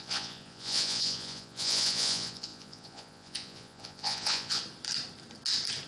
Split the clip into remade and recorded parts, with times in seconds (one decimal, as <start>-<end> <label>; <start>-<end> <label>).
0.0-4.6 remade; 4.6-5.9 recorded